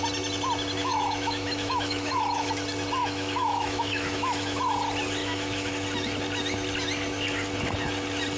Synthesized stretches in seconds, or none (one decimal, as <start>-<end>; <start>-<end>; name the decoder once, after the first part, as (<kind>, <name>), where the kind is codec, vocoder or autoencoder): 0.8-2.5 (autoencoder, DAC-VAE); 3.0-4.6; 5.2-5.7